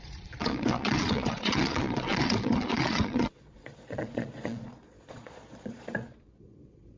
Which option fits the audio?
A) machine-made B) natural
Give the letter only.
A